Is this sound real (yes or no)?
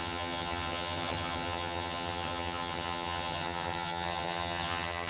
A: no